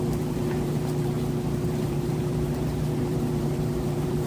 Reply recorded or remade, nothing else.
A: remade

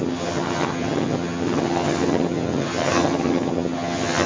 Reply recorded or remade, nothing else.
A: remade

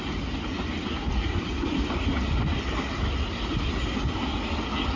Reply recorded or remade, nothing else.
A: recorded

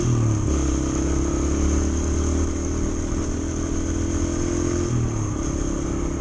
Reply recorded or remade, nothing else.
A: recorded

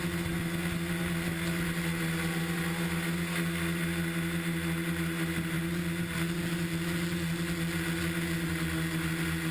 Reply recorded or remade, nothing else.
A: recorded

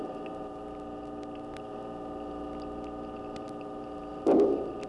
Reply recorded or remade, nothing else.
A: recorded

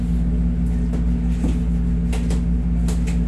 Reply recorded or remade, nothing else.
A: recorded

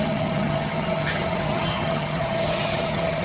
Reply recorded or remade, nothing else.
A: remade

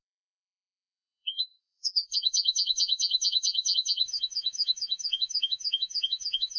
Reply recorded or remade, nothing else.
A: remade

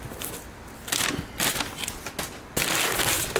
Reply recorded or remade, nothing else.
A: recorded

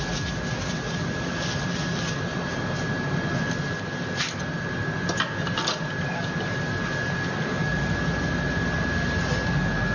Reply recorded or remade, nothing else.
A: recorded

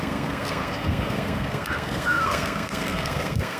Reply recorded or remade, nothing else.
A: remade